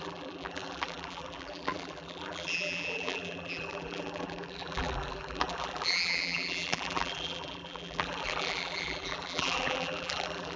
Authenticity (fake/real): fake